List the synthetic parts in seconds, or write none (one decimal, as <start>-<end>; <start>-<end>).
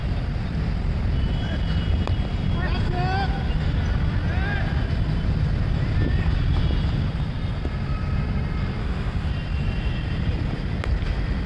8.8-9.3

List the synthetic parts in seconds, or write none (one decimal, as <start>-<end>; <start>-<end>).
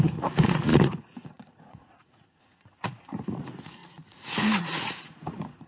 0.0-5.7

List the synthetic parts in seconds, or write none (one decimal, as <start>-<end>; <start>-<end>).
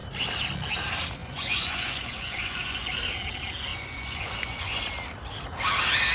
1.2-3.0; 3.7-4.8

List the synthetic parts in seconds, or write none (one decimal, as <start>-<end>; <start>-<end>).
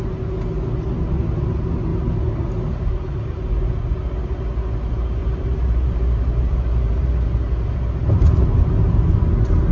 5.2-8.1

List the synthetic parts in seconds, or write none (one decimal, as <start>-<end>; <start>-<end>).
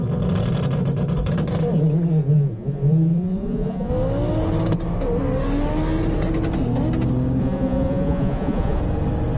2.3-3.9; 7.4-8.8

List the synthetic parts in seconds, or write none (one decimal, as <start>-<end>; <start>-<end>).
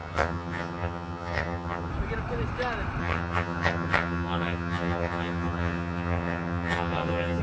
0.0-1.9; 3.0-7.4